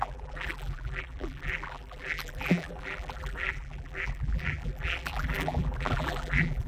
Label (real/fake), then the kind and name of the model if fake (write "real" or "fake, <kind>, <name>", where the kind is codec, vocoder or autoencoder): fake, vocoder, BigVGAN v2